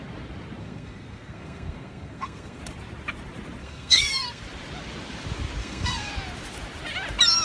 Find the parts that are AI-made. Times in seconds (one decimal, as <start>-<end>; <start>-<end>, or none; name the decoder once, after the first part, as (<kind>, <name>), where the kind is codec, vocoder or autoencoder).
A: 0.6-2.6 (codec, SNAC); 3.6-4.4; 5.6-6.1